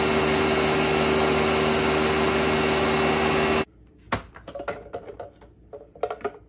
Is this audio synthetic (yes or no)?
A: no